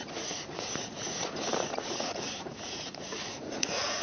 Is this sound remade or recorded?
remade